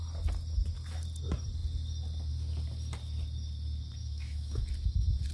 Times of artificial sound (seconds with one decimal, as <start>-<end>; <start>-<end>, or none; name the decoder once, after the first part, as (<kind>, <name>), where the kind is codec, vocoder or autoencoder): 4.0-4.6 (autoencoder, DAC-VAE)